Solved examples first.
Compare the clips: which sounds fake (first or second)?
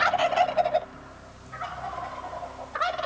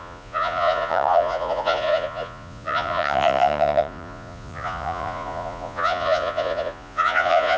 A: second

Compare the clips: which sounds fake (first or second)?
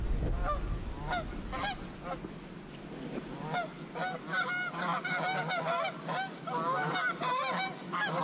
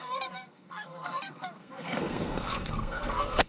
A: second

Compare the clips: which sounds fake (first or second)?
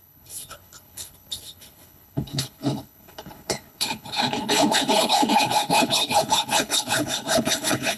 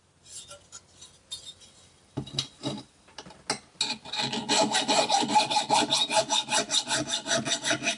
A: first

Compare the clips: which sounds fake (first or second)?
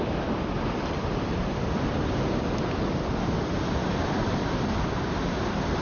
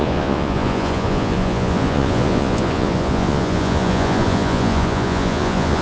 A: second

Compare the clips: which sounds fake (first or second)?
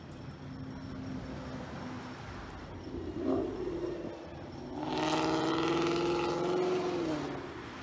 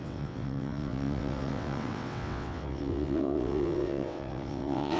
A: second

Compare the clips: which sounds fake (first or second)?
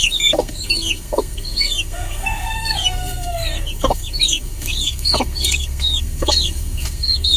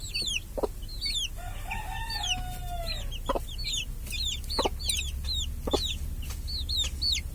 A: first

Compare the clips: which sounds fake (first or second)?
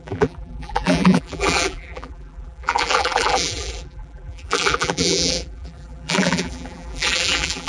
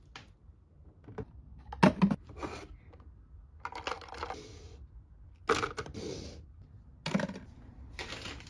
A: first